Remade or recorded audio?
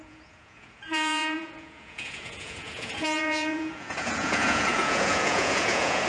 remade